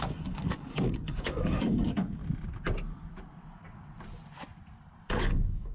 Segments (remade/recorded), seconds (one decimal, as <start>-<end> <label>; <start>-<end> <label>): 0.0-2.2 remade; 2.2-5.1 recorded; 5.1-5.7 remade